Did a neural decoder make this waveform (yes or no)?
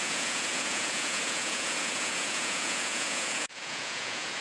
yes